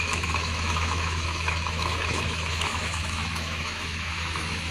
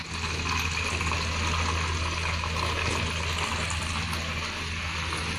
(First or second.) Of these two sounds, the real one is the second